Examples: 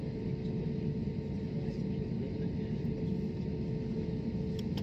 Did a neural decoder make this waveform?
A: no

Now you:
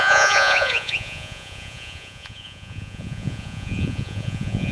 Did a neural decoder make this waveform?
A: yes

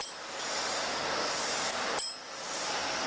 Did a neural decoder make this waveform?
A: no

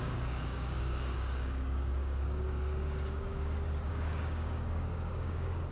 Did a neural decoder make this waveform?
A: yes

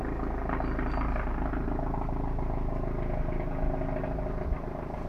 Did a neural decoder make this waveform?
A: no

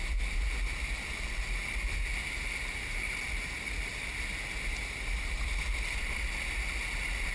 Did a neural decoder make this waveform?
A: no